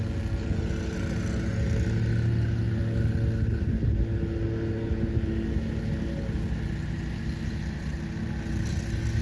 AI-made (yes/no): no